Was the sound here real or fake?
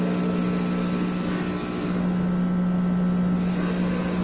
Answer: real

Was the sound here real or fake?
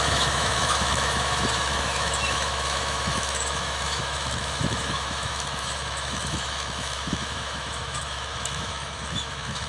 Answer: fake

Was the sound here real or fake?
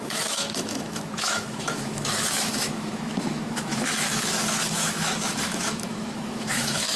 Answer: fake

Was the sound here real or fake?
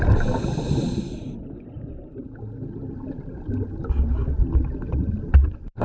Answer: real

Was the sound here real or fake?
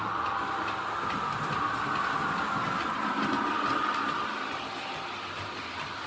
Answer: real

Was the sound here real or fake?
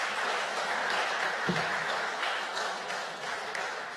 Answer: fake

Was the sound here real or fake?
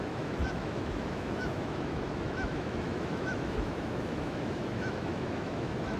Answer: fake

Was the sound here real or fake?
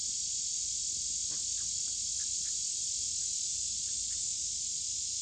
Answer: real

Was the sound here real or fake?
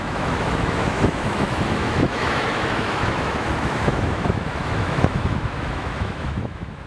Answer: fake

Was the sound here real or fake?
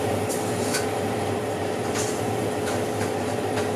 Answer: real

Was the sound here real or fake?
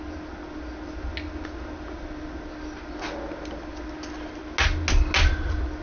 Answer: real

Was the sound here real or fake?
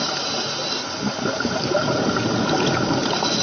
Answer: real